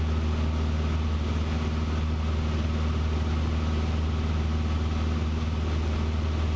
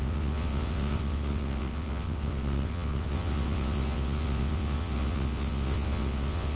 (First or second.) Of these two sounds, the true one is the first